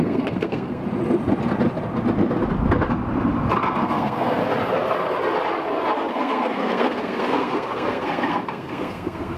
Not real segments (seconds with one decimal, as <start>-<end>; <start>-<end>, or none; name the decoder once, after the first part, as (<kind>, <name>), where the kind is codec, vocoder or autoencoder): 0.0-0.8 (codec, SNAC); 3.6-4.4; 6.1-9.4